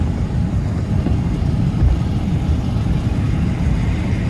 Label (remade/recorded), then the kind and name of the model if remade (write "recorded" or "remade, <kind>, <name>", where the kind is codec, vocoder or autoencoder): recorded